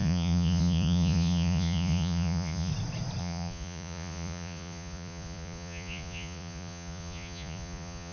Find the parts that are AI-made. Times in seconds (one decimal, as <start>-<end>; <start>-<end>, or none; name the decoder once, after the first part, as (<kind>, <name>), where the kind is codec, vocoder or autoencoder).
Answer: 0.0-2.7 (vocoder, Vocos); 3.2-8.1